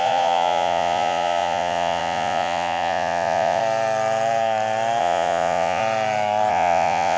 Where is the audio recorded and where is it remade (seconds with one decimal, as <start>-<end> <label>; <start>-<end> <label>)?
0.0-3.6 remade; 3.6-5.0 recorded; 5.0-5.8 remade; 5.8-6.5 recorded; 6.5-7.2 remade